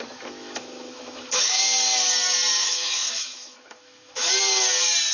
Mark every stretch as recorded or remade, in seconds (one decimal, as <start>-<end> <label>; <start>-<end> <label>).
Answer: 0.0-0.4 recorded; 0.4-1.6 remade; 1.6-2.6 recorded; 2.6-4.3 remade; 4.3-5.1 recorded

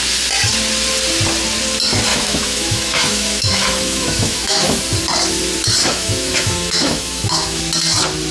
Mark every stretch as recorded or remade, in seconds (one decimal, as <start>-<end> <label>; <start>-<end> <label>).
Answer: 0.0-2.1 recorded; 2.1-4.8 remade; 4.8-5.8 recorded; 5.8-7.6 remade; 7.6-8.3 recorded

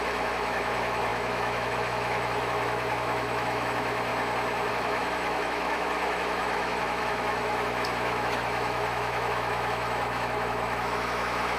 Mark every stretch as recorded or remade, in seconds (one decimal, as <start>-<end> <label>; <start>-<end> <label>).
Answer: 0.0-4.1 remade; 4.1-4.7 recorded; 4.7-11.6 remade

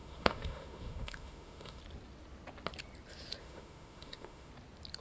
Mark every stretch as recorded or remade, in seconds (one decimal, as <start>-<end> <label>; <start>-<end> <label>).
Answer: 0.0-1.8 remade; 1.8-3.4 recorded; 3.4-4.5 remade; 4.5-5.0 recorded

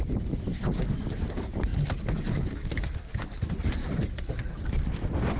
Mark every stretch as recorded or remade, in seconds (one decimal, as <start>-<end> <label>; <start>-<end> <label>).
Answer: 0.0-5.4 recorded

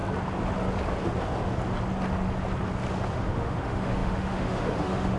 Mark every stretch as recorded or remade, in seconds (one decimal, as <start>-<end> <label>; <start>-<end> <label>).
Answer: 0.0-3.1 recorded; 3.1-5.2 remade

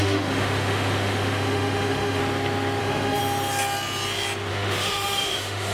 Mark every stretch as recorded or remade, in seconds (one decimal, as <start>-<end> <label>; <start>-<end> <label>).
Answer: 0.0-2.2 remade; 2.2-2.8 recorded; 2.8-3.2 remade; 3.2-4.5 recorded; 4.5-5.7 remade